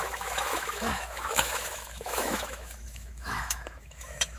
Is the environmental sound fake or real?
fake